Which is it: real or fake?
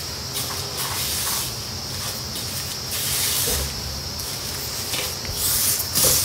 real